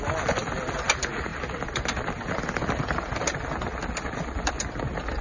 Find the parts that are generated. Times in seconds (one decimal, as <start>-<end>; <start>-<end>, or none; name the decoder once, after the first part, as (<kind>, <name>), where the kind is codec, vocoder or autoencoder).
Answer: none